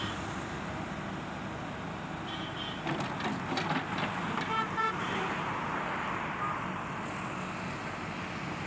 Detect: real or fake real